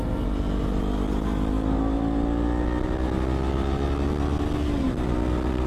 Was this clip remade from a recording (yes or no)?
no